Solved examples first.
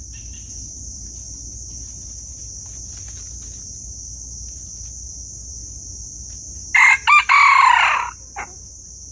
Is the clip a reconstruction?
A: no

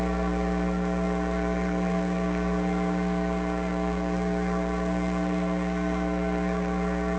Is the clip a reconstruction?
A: yes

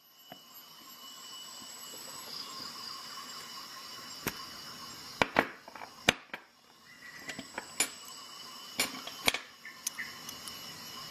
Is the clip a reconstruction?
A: no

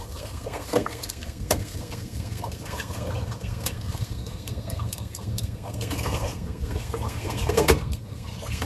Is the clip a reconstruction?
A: yes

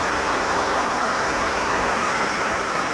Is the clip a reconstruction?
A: yes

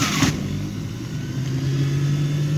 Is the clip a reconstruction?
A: no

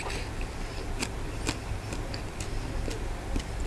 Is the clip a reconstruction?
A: no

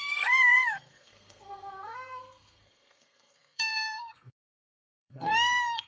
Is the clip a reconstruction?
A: yes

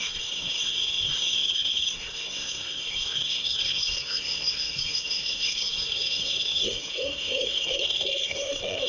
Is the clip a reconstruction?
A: yes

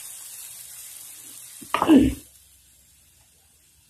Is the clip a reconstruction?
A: no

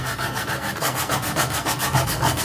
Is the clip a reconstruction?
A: yes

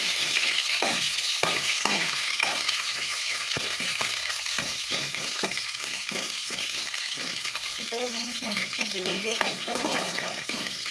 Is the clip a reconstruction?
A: yes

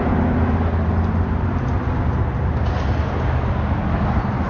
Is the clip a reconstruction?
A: no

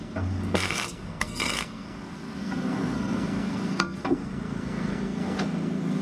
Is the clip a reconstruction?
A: yes